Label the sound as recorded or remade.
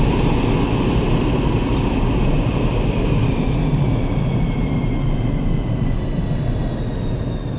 recorded